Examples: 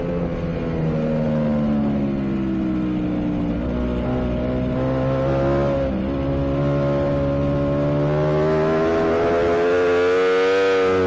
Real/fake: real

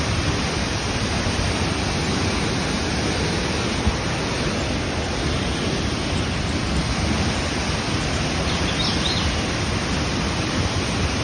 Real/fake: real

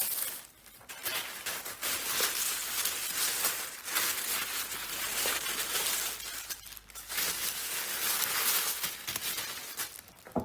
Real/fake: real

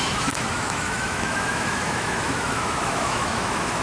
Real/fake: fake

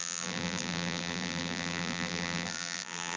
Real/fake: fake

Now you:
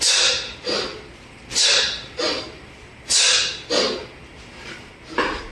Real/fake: fake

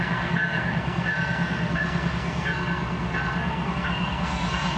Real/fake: fake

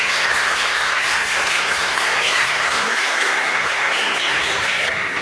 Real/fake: fake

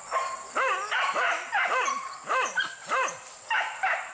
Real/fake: real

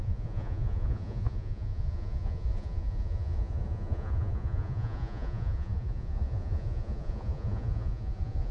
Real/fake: fake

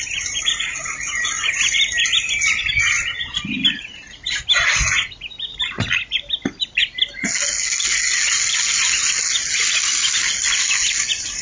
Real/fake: real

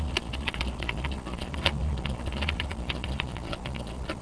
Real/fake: fake